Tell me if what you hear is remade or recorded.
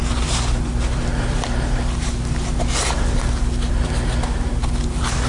recorded